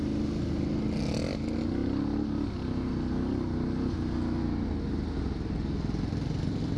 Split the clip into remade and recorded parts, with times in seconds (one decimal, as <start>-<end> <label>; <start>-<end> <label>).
0.0-6.8 recorded

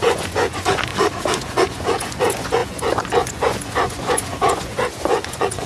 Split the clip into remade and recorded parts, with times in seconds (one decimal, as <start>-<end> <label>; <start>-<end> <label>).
0.0-0.9 remade; 0.9-1.4 recorded; 1.4-5.7 remade

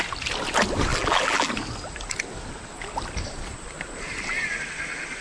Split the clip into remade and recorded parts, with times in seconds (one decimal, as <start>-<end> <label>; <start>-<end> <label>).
0.0-0.9 recorded; 0.9-1.5 remade; 1.5-5.2 recorded

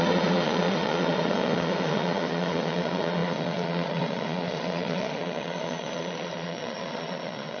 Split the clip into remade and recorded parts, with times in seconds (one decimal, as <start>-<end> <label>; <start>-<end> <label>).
0.0-7.6 remade

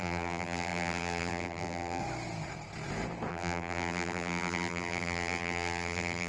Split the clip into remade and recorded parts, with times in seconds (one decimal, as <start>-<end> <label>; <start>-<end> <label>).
0.0-2.0 remade; 2.0-3.3 recorded; 3.3-6.3 remade